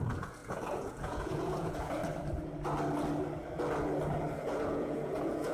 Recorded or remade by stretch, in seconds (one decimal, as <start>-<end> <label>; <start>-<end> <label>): 0.0-2.0 remade; 2.0-4.3 recorded; 4.3-5.5 remade